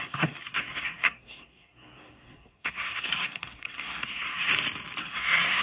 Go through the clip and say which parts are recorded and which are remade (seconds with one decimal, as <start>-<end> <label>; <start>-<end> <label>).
0.0-4.5 remade; 4.5-5.0 recorded; 5.0-5.6 remade